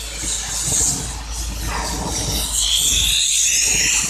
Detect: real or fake real